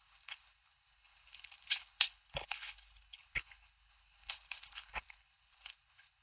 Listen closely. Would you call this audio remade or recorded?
remade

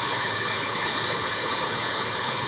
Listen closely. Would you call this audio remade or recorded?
remade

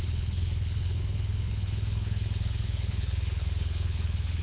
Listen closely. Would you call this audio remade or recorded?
remade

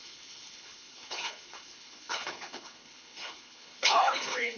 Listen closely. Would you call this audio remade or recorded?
remade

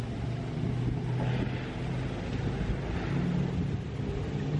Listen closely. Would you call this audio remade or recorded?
recorded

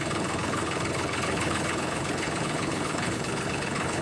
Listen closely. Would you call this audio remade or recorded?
remade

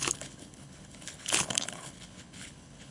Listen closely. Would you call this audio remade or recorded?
remade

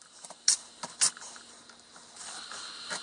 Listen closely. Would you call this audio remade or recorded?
recorded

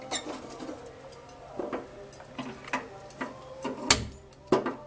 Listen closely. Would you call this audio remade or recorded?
recorded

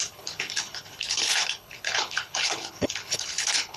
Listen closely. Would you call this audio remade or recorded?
remade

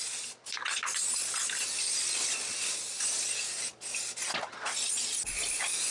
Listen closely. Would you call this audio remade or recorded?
recorded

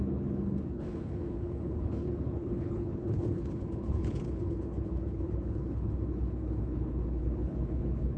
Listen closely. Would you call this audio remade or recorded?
remade